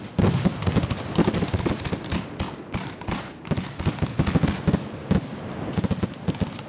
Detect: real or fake real